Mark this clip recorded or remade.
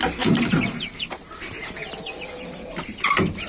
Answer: recorded